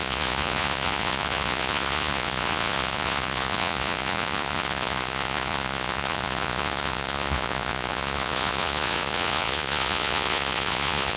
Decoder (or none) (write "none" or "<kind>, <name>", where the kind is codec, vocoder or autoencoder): vocoder, Vocos